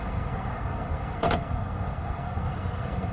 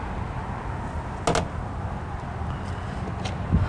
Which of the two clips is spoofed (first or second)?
first